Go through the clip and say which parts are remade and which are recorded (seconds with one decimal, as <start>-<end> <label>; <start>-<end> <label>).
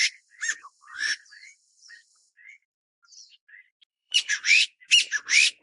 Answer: 0.0-3.9 recorded; 3.9-4.8 remade; 4.8-5.6 recorded